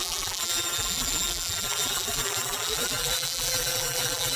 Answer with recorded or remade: remade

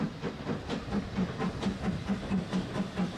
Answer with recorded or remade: recorded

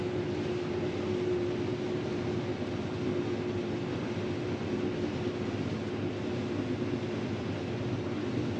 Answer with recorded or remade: recorded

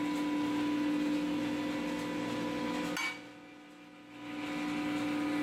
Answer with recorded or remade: recorded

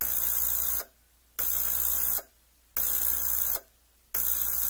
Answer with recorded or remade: recorded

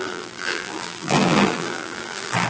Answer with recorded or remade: remade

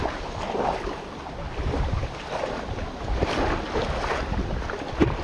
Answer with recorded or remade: recorded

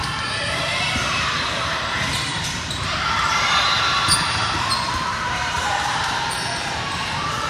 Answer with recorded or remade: remade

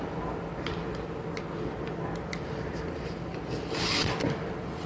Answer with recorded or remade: recorded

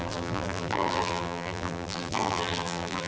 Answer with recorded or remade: remade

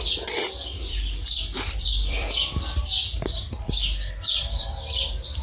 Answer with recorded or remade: remade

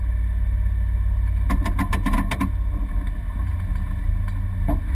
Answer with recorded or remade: recorded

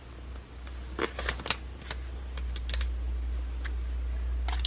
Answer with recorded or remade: recorded